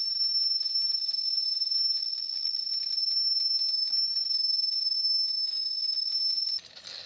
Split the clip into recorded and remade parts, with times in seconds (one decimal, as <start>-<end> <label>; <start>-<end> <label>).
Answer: 0.0-2.0 recorded; 2.0-2.6 remade; 2.6-7.1 recorded